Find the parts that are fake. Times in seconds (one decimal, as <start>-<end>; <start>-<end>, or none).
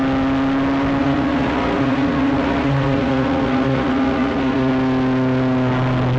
1.0-4.7